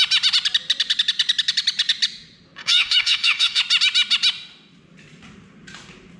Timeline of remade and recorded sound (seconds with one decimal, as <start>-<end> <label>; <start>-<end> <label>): 0.0-2.6 recorded; 2.6-3.6 remade; 3.6-6.2 recorded